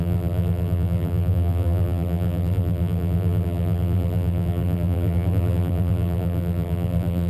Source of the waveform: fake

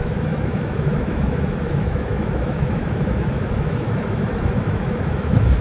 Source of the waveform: fake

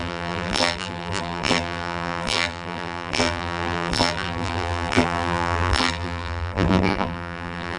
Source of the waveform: fake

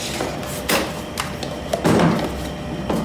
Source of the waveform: real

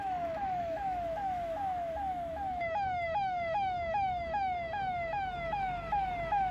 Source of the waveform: fake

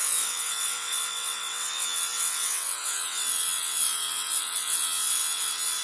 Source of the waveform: fake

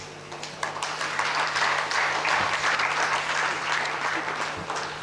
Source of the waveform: fake